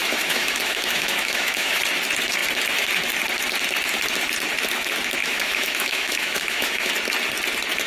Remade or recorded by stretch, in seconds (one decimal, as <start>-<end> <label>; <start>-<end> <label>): 0.0-1.8 remade; 1.8-5.2 recorded; 5.2-6.9 remade; 6.9-7.9 recorded